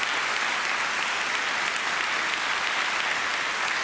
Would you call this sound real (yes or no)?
yes